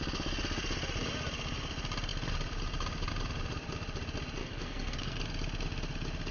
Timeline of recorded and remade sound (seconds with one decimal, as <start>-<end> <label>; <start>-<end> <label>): 0.0-4.4 recorded; 4.4-5.2 remade; 5.2-6.3 recorded